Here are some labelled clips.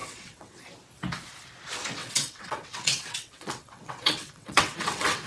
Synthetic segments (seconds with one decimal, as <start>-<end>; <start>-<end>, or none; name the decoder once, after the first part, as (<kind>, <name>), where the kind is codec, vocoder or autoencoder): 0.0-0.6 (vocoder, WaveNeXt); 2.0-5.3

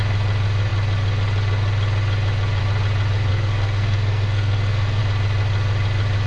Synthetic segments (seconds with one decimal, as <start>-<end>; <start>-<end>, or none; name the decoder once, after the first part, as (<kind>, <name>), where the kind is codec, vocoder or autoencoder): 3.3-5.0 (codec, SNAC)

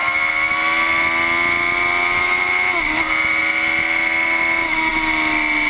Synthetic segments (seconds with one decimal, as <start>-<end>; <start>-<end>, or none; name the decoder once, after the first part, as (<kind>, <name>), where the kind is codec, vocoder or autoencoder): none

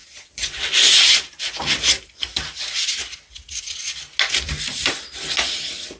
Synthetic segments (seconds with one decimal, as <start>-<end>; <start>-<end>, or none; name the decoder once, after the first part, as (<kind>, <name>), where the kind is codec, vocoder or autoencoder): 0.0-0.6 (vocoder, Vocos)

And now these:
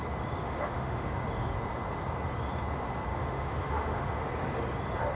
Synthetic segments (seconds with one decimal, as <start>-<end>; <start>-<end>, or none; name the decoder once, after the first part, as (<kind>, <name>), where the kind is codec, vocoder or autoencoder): 0.4-1.1 (autoencoder, DAC-VAE); 3.1-4.3

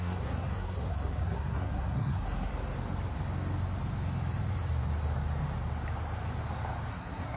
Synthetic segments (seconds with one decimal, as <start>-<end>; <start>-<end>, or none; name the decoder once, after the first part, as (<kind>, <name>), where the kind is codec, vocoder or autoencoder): 0.0-2.5 (codec, SNAC); 6.9-7.4